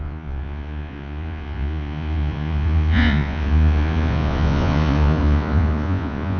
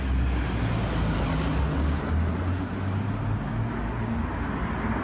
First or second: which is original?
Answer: second